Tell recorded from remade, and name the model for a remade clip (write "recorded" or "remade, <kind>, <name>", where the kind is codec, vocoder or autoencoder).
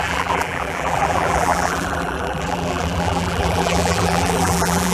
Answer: remade, vocoder, BigVGAN v2